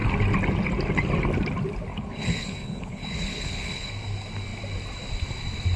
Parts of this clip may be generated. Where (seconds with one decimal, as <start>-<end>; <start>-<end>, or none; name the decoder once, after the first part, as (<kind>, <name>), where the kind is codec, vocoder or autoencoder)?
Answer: 1.9-3.9 (codec, HILCodec)

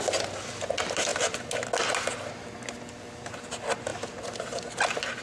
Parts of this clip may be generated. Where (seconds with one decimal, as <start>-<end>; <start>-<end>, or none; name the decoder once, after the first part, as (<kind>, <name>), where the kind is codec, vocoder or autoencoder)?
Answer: none

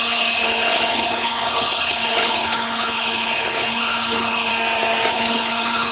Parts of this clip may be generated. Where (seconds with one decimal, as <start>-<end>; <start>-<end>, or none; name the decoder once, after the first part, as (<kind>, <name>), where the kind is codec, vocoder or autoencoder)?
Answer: 0.0-4.5 (codec, HILCodec); 5.1-5.9